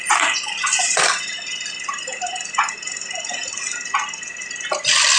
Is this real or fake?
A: real